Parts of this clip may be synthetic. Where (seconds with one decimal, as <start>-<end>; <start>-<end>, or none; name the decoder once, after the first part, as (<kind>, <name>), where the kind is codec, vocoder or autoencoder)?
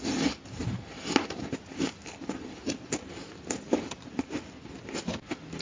none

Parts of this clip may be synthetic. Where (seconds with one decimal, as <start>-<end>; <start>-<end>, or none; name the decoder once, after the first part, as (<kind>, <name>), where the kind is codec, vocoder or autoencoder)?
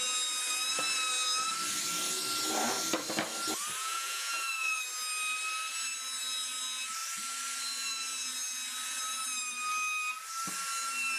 3.8-4.8 (vocoder, Vocos)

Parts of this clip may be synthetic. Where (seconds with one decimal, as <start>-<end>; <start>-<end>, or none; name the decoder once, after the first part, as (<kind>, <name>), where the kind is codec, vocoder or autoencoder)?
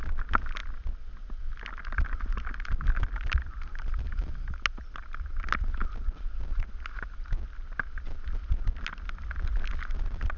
none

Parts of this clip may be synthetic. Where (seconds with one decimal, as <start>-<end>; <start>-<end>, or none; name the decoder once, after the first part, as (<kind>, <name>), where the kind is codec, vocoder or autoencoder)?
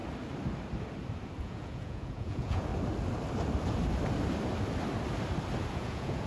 1.4-2.7 (vocoder, Vocos); 5.7-6.3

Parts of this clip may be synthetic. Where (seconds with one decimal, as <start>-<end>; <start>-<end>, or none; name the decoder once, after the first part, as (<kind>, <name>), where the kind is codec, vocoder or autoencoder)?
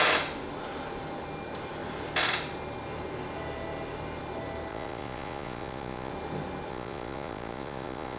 4.7-6.1 (vocoder, Vocos); 6.7-8.2